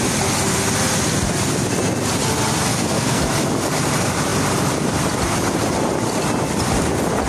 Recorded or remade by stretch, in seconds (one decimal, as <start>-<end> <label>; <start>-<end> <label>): 0.0-2.7 recorded; 2.7-3.2 remade; 3.2-7.3 recorded